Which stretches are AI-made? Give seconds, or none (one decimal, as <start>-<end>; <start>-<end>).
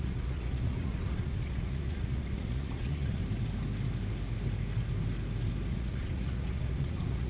0.0-3.2; 5.7-7.3